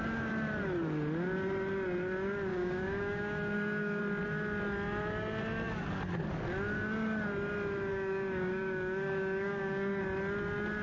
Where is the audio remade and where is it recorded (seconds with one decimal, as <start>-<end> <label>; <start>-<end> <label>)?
0.0-2.5 recorded; 2.5-4.0 remade; 4.0-7.9 recorded; 7.9-10.0 remade; 10.0-10.8 recorded